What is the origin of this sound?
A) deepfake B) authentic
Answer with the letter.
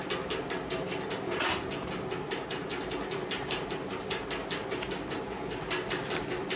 B